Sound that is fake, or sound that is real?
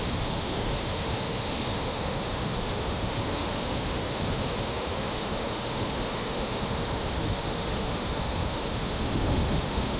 fake